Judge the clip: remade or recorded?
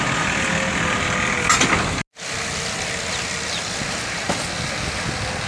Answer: recorded